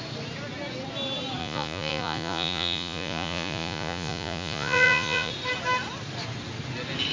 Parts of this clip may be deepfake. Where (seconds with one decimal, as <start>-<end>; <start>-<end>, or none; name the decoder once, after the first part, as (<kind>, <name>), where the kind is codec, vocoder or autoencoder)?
1.4-5.3 (vocoder, Vocos)

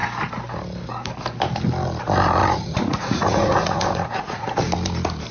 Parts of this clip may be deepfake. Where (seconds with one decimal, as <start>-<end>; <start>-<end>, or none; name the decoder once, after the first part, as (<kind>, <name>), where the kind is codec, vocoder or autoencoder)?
2.4-4.6 (vocoder, Vocos)

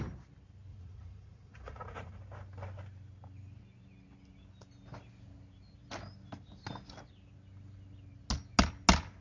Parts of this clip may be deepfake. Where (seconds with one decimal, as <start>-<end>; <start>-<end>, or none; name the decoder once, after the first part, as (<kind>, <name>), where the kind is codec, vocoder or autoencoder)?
0.7-2.2 (vocoder, Vocos)

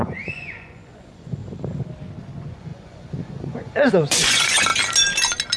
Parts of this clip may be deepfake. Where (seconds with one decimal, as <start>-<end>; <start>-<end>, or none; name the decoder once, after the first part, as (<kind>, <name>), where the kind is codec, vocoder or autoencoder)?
0.0-1.4 (vocoder, Vocos); 2.2-4.7

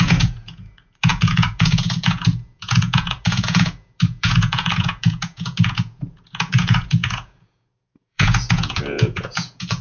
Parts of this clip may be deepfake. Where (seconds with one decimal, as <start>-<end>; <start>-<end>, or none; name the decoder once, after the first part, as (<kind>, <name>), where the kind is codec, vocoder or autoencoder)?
0.0-9.8 (vocoder, Vocos)

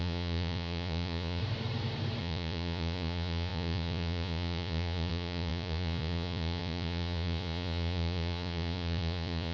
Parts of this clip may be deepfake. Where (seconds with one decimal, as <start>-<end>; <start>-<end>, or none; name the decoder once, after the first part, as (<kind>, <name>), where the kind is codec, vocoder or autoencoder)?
0.0-1.4 (vocoder, Vocos); 2.2-9.5

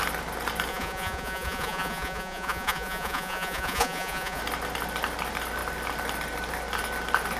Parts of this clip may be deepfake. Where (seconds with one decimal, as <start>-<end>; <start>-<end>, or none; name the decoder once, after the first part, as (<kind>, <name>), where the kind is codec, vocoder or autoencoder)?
0.7-4.4 (vocoder, Vocos)